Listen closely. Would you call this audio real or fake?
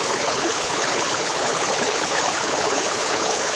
fake